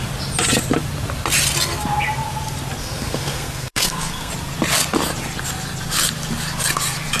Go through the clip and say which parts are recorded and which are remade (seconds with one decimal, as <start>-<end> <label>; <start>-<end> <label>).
0.0-2.8 recorded; 2.8-4.3 remade; 4.3-7.2 recorded

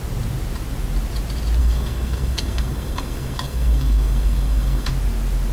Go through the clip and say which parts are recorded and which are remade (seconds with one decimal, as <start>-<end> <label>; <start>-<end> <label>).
0.0-1.6 recorded; 1.6-4.9 remade; 4.9-5.5 recorded

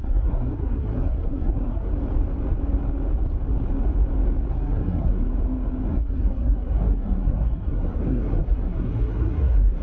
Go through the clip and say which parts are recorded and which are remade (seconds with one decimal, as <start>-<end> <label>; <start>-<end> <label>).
0.0-1.9 remade; 1.9-4.5 recorded; 4.5-5.2 remade; 5.2-5.9 recorded; 5.9-9.8 remade

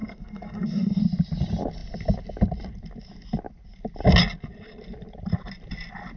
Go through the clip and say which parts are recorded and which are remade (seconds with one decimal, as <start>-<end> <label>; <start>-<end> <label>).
0.0-1.0 remade; 1.0-6.2 recorded

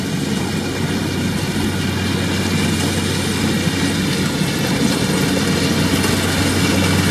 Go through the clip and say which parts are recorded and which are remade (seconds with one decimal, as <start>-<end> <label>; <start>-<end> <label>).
0.0-7.1 recorded

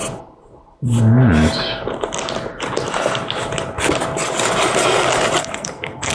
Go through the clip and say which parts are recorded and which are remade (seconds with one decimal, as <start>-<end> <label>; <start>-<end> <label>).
0.0-5.4 recorded; 5.4-6.1 remade

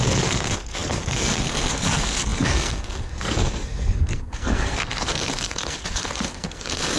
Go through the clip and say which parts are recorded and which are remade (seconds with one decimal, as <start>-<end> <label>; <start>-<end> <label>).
0.0-7.0 remade

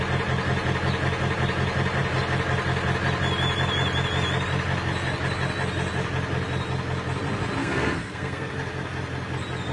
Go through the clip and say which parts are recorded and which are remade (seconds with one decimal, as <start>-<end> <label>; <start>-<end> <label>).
0.0-7.6 recorded; 7.6-8.5 remade; 8.5-9.7 recorded